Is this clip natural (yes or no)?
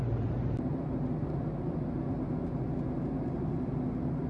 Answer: yes